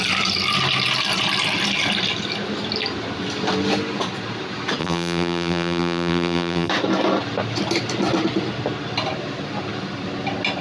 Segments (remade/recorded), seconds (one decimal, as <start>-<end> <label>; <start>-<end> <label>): 0.0-4.8 recorded; 4.8-6.7 remade; 6.7-10.6 recorded